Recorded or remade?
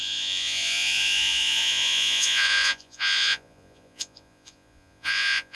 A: remade